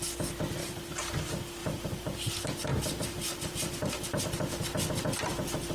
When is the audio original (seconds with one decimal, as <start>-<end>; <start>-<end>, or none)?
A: 0.0-0.6; 1.1-1.6; 2.3-2.7; 4.2-5.7